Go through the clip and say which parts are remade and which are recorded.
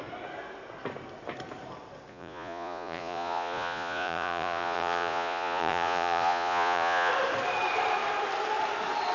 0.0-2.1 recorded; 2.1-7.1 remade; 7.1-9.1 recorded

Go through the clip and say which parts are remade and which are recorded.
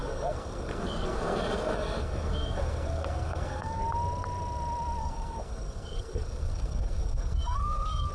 0.0-3.8 remade; 3.8-5.0 recorded; 5.0-8.1 remade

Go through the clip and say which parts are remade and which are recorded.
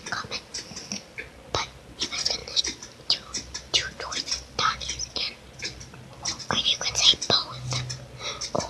0.0-2.4 recorded; 2.4-6.4 remade; 6.4-7.4 recorded; 7.4-8.2 remade; 8.2-8.7 recorded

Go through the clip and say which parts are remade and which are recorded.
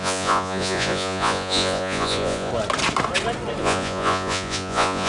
0.0-2.5 remade; 2.5-3.6 recorded; 3.6-5.1 remade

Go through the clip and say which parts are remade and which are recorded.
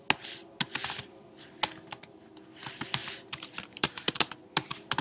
0.0-3.0 recorded; 3.0-4.1 remade; 4.1-5.0 recorded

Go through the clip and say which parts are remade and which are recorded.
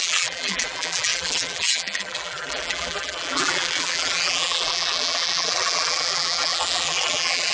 0.0-7.5 remade